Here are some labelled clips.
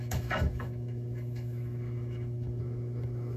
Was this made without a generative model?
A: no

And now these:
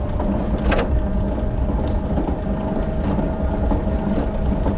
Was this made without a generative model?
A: yes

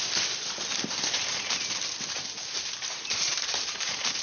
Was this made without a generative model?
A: yes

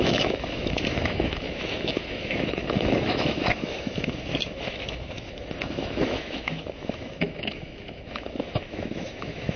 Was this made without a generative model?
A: no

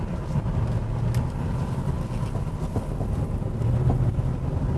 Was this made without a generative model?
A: yes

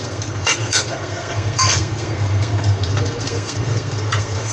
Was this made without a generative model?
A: no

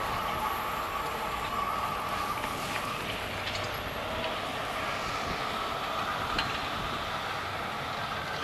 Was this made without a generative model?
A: yes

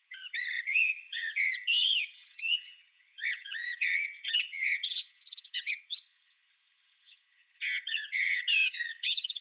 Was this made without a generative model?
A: no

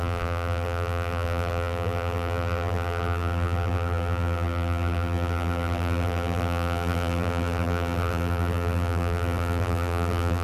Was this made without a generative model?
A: no